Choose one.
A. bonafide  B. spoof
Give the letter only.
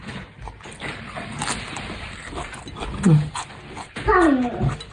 A